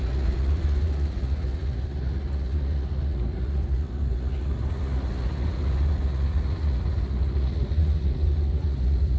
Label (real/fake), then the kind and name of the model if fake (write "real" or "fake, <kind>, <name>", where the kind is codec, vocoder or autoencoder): fake, vocoder, Vocos